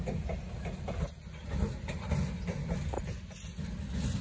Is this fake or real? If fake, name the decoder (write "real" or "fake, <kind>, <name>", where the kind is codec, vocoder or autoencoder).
real